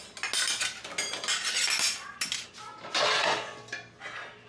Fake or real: real